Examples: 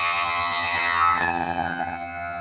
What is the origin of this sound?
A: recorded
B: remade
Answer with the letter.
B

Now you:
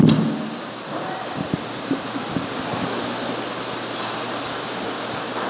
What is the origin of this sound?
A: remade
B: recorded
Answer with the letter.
B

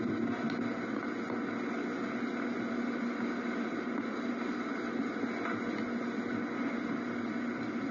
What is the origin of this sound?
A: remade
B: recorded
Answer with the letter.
B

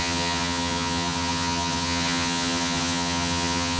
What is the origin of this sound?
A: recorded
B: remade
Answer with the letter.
B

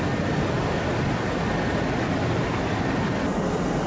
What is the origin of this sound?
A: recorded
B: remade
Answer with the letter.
A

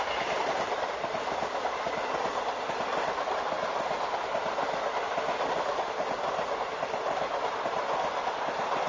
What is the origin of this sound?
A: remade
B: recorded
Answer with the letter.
B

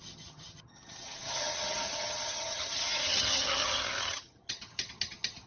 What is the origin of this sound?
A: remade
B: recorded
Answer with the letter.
A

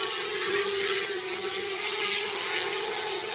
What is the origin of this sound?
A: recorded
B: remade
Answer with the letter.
B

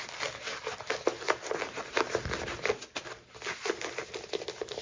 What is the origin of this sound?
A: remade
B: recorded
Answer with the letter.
B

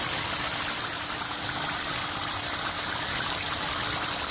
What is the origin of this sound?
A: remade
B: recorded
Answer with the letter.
B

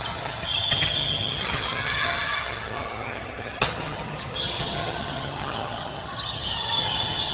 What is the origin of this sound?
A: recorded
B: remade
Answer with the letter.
B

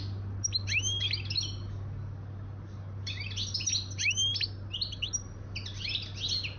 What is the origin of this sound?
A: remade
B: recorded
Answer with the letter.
B